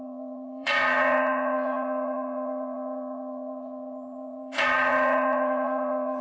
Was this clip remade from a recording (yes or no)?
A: yes